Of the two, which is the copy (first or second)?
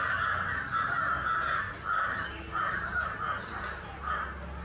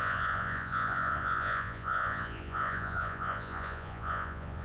second